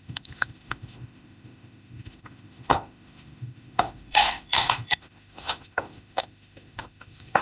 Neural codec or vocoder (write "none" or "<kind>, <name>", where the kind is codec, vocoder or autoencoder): autoencoder, DAC-VAE